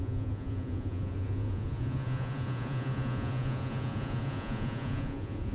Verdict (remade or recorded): remade